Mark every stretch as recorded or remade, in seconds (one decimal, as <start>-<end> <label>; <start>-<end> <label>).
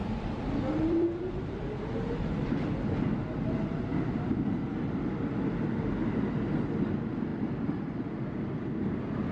0.0-2.2 remade; 2.2-7.3 recorded; 7.3-9.3 remade